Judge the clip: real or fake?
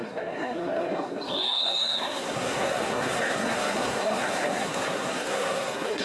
fake